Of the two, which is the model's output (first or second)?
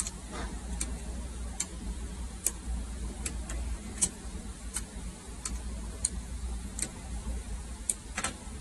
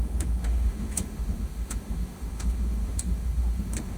second